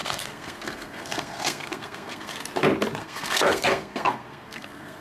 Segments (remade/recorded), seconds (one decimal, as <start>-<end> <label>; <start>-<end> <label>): 0.0-2.3 remade; 2.3-3.0 recorded; 3.0-5.0 remade